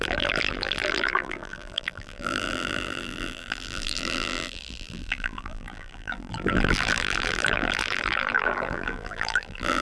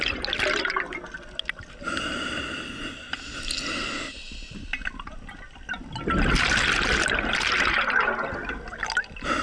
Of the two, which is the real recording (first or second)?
second